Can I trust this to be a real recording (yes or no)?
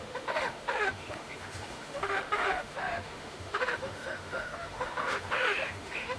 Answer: no